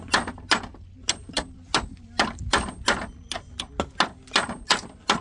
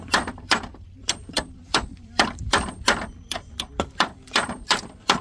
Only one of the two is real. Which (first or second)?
first